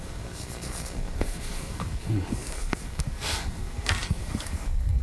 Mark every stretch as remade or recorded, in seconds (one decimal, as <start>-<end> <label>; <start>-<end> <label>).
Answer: 0.0-5.0 remade